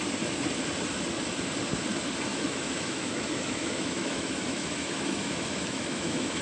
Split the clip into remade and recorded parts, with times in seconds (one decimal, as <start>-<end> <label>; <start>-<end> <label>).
0.0-2.3 recorded; 2.3-6.4 remade